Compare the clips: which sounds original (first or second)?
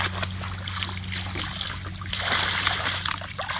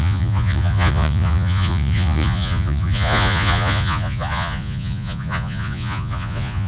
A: first